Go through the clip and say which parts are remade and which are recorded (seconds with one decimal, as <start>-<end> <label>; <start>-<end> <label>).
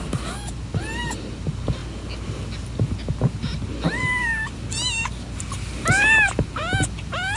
0.0-7.4 recorded